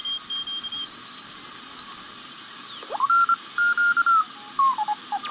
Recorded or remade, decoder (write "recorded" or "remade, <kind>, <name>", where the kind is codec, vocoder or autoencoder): recorded